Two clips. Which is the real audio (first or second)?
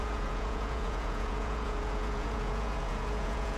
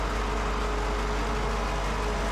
second